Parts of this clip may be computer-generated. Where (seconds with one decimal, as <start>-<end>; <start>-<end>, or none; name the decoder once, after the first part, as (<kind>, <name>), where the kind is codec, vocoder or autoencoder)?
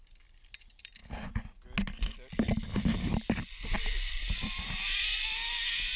none